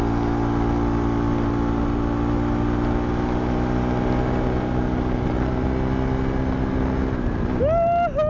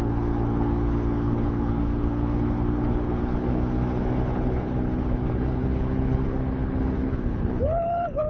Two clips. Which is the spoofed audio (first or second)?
second